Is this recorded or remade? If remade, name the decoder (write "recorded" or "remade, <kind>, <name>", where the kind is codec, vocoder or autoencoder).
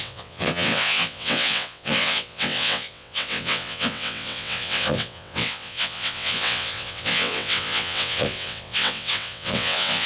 remade, vocoder, WaveNeXt